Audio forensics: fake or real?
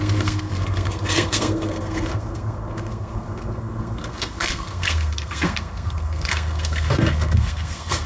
fake